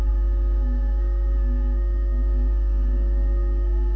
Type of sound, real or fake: fake